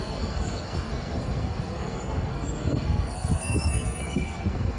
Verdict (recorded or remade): remade